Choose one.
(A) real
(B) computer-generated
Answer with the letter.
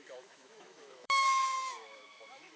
B